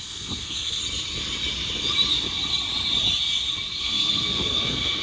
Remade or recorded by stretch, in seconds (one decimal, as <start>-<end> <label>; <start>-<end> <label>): 0.0-0.8 remade; 0.8-3.8 recorded; 3.8-5.0 remade